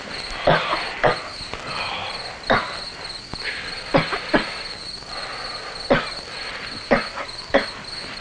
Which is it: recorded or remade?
recorded